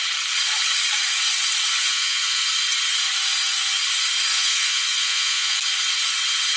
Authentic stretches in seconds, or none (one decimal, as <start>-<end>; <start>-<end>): 0.0-1.7; 2.5-4.3; 5.6-6.6